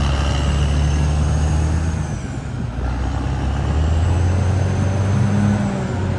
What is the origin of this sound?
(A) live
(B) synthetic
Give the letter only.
A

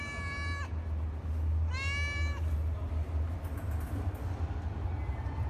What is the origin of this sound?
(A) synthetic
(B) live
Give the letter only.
B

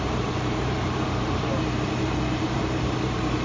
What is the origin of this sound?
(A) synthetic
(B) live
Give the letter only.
A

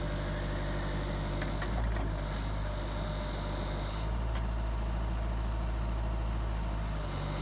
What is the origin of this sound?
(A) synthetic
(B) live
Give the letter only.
B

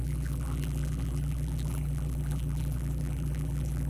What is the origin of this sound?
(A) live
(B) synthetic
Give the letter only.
B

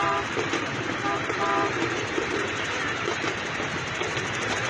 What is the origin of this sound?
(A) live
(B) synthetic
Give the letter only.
B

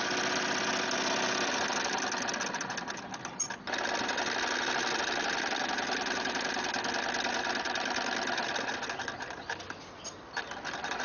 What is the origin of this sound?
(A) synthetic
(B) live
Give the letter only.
B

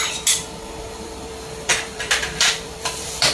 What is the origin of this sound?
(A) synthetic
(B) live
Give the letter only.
A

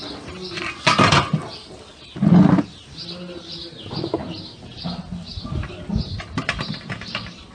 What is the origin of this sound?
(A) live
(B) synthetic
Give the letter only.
A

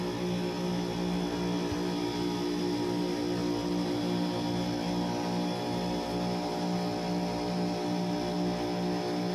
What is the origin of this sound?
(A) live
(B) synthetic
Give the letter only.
A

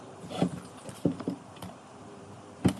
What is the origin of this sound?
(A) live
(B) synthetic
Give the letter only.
B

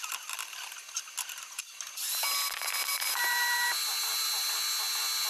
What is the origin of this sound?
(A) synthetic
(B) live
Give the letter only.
B